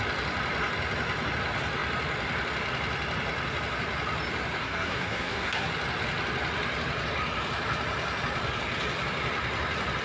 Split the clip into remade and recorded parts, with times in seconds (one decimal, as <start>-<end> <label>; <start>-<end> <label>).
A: 0.0-4.6 recorded; 4.6-5.7 remade; 5.7-10.0 recorded